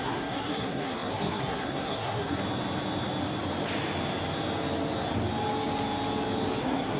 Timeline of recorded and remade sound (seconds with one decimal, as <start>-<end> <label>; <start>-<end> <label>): 0.0-2.4 remade; 2.4-6.6 recorded; 6.6-7.0 remade